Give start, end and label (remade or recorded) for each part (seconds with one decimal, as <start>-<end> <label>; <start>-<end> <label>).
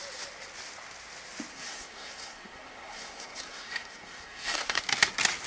0.0-1.5 recorded; 1.5-4.8 remade; 4.8-5.5 recorded